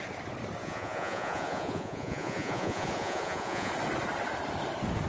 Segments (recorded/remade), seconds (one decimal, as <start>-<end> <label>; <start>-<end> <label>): 0.0-0.6 recorded; 0.6-3.7 remade; 3.7-5.1 recorded